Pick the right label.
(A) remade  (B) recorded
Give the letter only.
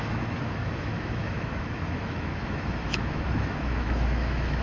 A